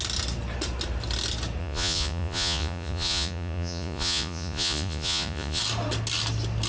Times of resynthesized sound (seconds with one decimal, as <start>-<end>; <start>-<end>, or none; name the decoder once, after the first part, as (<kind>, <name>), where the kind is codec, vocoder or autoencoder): 1.6-5.6 (vocoder, Vocos)